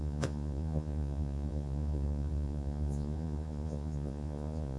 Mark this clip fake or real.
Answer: fake